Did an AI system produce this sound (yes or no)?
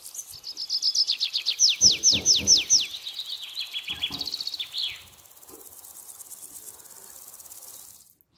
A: no